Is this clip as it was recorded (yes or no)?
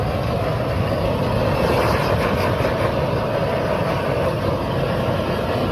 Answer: yes